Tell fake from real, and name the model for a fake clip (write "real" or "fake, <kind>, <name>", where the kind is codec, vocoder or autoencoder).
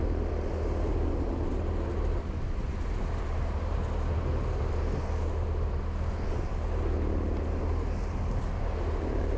real